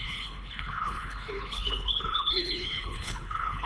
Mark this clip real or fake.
fake